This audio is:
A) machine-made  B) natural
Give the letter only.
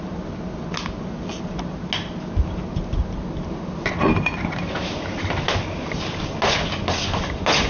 B